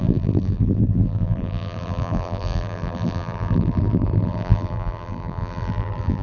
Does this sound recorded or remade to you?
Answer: remade